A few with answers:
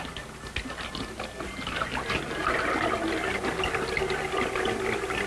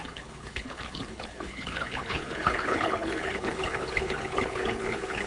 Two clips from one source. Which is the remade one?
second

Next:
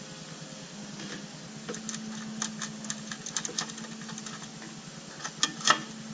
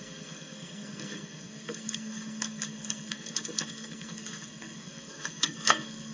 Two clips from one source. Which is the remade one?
second